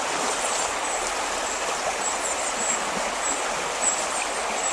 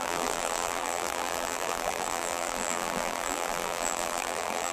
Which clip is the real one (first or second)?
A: first